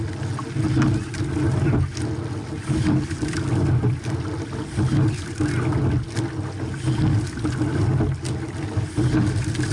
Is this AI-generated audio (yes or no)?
no